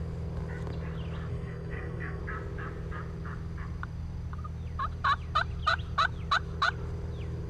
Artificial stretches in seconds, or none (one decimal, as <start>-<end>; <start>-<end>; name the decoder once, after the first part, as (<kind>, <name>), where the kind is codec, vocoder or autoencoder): 1.3-2.2 (codec, SNAC)